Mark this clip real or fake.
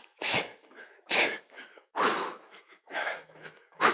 fake